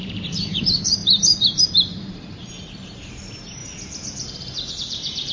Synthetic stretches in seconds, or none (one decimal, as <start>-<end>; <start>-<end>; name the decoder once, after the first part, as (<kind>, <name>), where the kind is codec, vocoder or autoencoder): 0.0-3.6 (vocoder, BigVGAN v2); 4.7-5.3